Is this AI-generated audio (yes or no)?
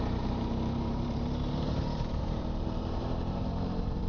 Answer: yes